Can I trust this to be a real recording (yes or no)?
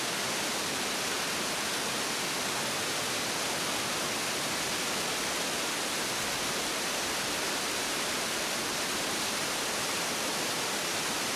yes